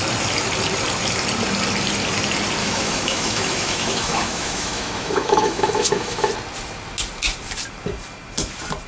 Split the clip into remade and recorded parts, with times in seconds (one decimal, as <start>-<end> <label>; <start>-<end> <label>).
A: 0.0-2.6 recorded; 2.6-6.3 remade; 6.3-8.9 recorded